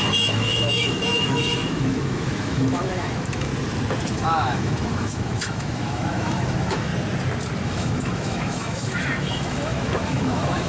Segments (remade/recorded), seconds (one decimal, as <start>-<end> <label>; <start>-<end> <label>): 0.0-3.5 remade; 3.5-4.1 recorded; 4.1-6.9 remade; 6.9-7.6 recorded; 7.6-10.7 remade